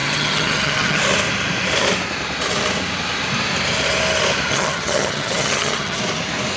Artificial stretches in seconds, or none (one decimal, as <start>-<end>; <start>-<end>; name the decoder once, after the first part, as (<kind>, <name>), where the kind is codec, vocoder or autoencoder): 0.0-1.0 (vocoder, HiFi-GAN); 4.5-6.0